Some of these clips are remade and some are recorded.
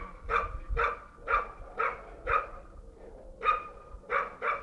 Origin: recorded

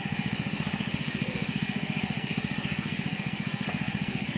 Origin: remade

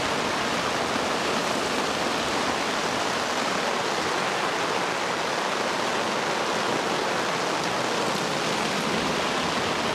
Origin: recorded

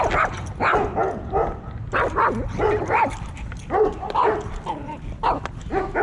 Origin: recorded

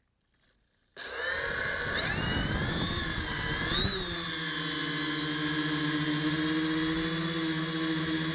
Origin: recorded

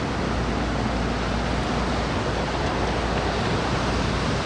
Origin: recorded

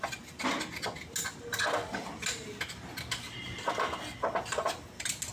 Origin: recorded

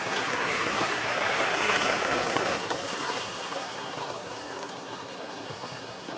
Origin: remade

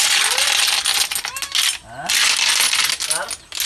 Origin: recorded